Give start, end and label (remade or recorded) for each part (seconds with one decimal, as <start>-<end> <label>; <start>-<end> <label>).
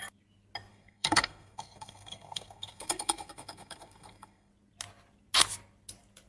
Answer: 0.0-0.7 recorded; 0.7-4.5 remade; 4.5-6.3 recorded